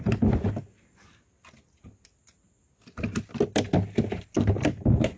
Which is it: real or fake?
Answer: real